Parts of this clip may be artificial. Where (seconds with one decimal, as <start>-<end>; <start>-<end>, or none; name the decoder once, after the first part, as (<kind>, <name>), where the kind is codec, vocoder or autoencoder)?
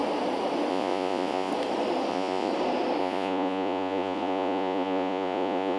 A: 0.7-1.5 (vocoder, Vocos); 2.1-2.5; 3.0-5.8